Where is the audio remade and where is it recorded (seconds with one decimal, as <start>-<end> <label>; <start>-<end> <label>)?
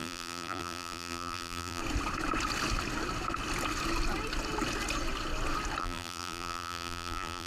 0.0-1.8 remade; 1.8-5.8 recorded; 5.8-7.5 remade